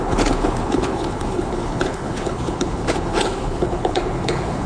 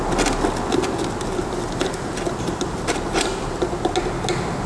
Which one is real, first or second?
second